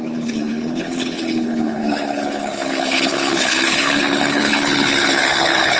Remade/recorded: remade